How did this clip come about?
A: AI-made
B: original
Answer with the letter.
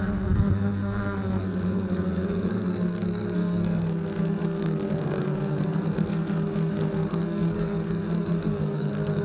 A